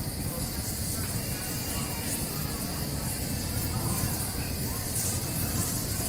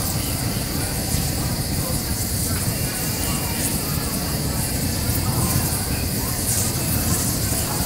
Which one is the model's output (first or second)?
second